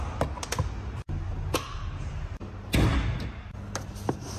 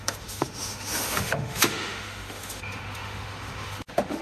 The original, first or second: first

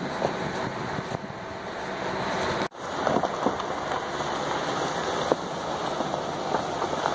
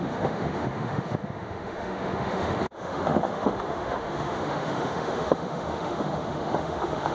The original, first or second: first